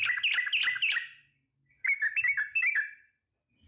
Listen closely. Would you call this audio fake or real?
real